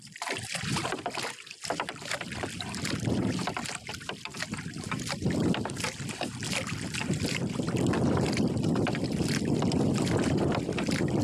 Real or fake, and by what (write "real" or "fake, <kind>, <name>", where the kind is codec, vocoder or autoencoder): fake, vocoder, BigVGAN v2